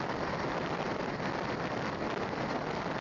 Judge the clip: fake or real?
real